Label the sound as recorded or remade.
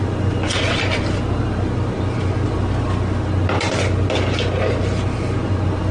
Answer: recorded